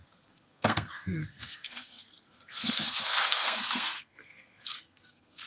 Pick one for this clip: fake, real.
fake